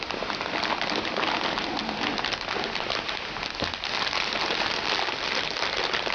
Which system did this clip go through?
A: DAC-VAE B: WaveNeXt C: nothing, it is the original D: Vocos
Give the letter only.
C